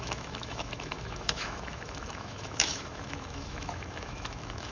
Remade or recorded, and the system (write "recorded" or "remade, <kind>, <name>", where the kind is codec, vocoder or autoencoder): remade, autoencoder, DAC-VAE